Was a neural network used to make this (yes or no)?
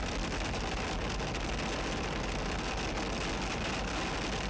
no